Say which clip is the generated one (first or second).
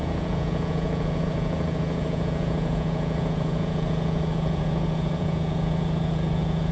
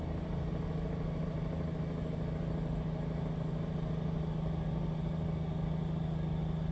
first